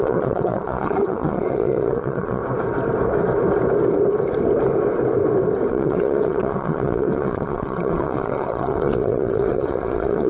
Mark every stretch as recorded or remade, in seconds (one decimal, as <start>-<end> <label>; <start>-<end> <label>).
0.0-2.4 remade; 2.4-5.7 recorded; 5.7-10.3 remade